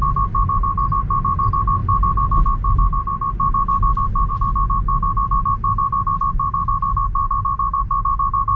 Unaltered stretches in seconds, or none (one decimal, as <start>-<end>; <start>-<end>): 0.0-8.6